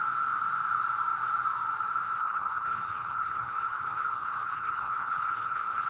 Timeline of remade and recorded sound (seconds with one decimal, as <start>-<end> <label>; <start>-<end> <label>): 0.0-2.2 recorded; 2.2-5.9 remade